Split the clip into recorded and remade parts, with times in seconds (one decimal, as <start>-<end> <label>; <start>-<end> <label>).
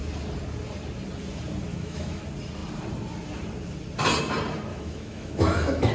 0.0-1.7 recorded; 1.7-2.2 remade; 2.2-4.7 recorded; 4.7-5.9 remade